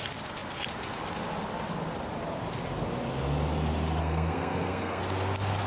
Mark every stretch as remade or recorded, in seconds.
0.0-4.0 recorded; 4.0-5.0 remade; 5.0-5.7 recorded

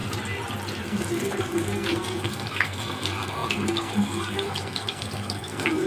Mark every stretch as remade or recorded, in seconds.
0.0-0.8 recorded; 0.8-5.9 remade

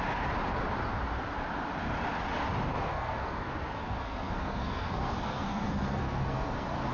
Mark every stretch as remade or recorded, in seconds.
0.0-2.7 recorded; 2.7-6.9 remade

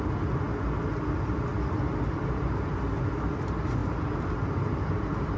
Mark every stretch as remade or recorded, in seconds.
0.0-5.4 recorded

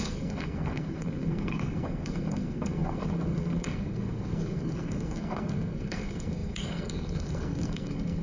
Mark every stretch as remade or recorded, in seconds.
0.0-8.2 remade